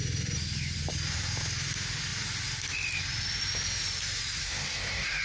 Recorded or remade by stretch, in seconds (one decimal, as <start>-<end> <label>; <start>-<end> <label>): 0.0-4.4 recorded; 4.4-5.2 remade